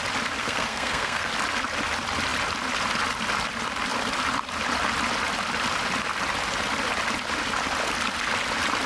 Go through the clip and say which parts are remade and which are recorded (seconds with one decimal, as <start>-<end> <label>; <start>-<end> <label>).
0.0-0.4 recorded; 0.4-1.3 remade; 1.3-8.9 recorded